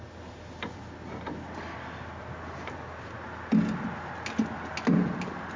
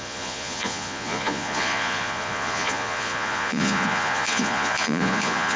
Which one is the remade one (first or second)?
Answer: second